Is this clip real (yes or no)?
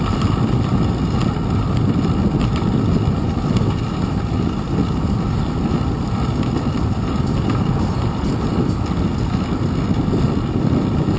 yes